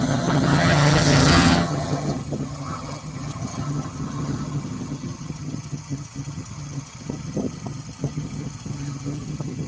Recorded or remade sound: remade